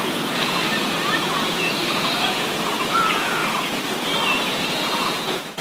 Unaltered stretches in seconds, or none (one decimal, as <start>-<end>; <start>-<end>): 3.4-4.3